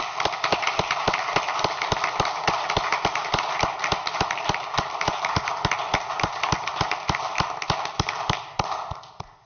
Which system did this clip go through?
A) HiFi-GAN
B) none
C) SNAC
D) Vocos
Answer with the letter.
B